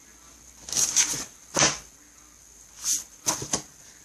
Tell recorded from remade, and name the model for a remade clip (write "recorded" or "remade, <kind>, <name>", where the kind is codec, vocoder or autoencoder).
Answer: recorded